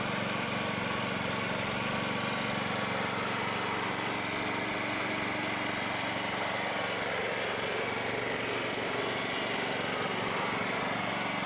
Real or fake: real